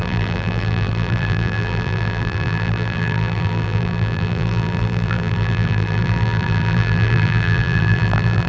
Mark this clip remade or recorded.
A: remade